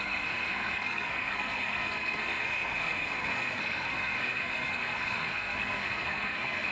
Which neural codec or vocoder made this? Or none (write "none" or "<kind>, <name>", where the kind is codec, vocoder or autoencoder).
codec, SNAC